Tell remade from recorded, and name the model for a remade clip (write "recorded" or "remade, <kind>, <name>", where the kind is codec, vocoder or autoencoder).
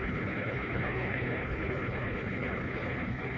remade, codec, HILCodec